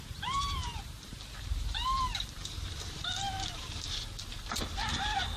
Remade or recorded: remade